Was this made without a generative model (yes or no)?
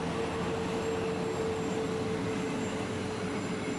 yes